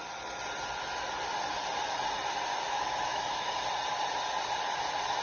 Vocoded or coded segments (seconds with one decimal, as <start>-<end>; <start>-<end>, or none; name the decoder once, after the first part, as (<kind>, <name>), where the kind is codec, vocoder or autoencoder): 2.5-3.6 (autoencoder, DAC-VAE)